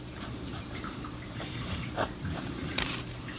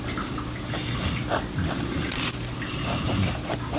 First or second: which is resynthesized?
first